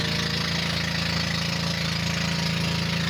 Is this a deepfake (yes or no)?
no